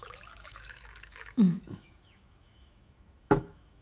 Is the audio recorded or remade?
remade